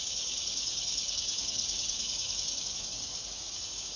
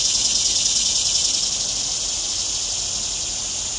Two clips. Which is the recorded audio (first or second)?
second